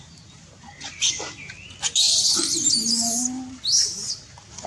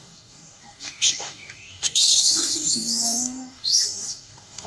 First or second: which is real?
first